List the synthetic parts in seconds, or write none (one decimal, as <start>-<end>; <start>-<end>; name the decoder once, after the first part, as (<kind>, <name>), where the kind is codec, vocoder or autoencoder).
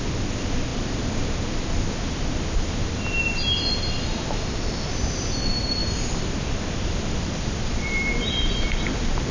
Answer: 5.8-9.3 (vocoder, BigVGAN v2)